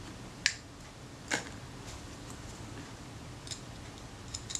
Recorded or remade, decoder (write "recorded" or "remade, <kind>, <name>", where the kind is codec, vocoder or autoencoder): recorded